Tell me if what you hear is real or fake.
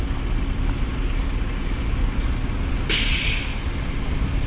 real